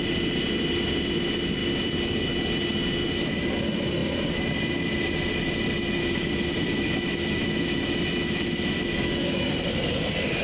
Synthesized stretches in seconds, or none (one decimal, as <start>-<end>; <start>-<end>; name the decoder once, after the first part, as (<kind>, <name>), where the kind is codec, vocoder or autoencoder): 6.0-9.5 (autoencoder, DAC-VAE)